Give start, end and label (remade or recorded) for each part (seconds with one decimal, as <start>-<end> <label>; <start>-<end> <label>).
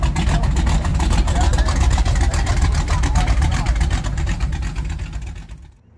0.0-0.9 recorded; 0.9-4.5 remade; 4.5-6.0 recorded